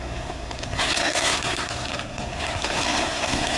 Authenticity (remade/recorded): remade